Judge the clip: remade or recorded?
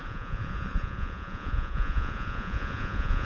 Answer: remade